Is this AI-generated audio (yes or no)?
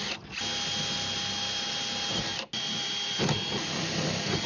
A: no